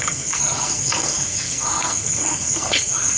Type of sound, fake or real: fake